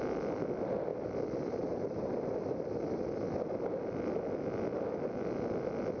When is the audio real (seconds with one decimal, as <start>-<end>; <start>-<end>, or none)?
0.0-0.9; 2.0-6.0